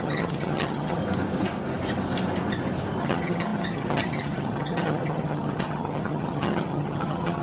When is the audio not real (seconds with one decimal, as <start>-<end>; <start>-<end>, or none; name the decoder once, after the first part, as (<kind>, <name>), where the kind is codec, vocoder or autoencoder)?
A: 0.0-1.0 (vocoder, HiFi-GAN); 3.0-7.4